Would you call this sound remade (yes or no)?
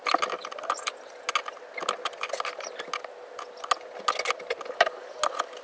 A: no